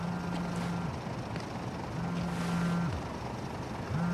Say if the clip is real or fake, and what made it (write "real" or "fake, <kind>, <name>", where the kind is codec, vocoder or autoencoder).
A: real